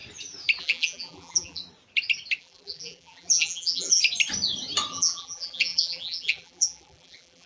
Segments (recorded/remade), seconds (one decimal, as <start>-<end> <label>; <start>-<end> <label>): 0.0-0.6 recorded; 0.6-1.6 remade; 1.6-2.4 recorded; 2.4-4.0 remade; 4.0-4.9 recorded; 4.9-7.5 remade